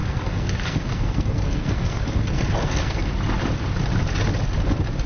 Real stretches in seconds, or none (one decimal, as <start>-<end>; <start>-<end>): 3.1-5.1